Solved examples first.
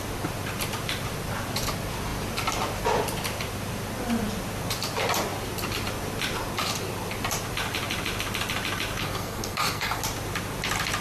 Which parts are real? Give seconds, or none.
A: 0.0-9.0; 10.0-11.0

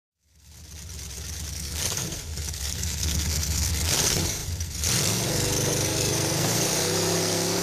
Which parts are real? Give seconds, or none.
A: 0.6-1.5

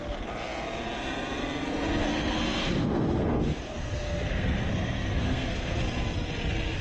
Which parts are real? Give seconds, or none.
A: 0.0-2.0; 5.8-6.8

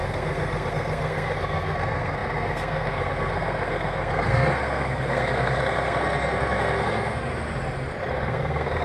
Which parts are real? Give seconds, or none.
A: 7.3-8.1

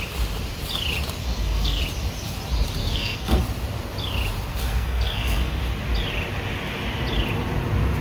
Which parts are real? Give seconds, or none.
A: 0.0-1.2; 1.8-2.8; 3.4-4.5; 5.6-8.0

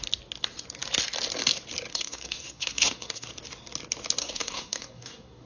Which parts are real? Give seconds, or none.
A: 0.0-1.9; 3.3-4.2

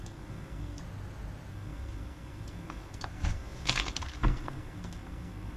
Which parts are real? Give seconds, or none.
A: 0.8-1.5